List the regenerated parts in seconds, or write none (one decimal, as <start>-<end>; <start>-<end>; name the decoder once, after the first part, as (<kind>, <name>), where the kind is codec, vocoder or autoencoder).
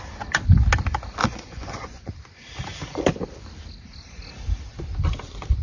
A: 1.2-2.1 (vocoder, Vocos)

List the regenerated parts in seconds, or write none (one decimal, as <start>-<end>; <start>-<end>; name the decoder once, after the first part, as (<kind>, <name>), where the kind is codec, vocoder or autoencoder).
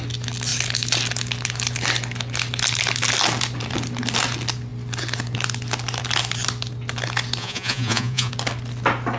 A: 7.4-8.3 (vocoder, Vocos)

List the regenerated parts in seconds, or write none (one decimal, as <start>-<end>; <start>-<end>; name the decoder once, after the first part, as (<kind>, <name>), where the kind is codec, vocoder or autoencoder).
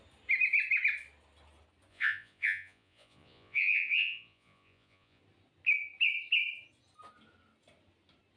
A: 1.9-5.2 (vocoder, Vocos)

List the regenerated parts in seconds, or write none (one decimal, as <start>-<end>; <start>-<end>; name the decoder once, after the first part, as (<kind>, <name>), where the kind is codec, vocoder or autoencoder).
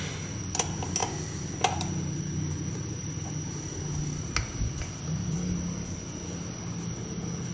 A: none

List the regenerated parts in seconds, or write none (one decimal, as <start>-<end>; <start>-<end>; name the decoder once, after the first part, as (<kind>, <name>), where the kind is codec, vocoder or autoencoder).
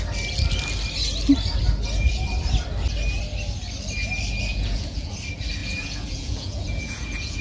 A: 4.5-5.1 (vocoder, Vocos); 5.6-7.4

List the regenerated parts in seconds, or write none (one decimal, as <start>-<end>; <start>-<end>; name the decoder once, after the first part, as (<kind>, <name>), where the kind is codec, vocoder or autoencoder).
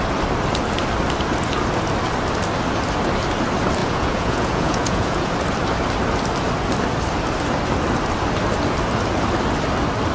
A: 3.8-5.3 (vocoder, Vocos)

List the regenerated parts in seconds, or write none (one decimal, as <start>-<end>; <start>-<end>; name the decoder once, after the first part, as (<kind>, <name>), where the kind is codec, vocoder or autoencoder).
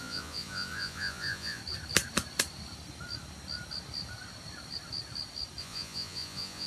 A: 0.0-1.6 (vocoder, Vocos); 5.6-6.7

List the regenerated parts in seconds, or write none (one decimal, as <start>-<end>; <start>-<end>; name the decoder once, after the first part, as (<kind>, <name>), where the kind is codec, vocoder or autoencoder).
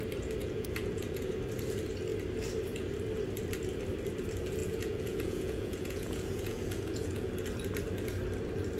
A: 0.4-1.3 (vocoder, Vocos); 4.6-7.3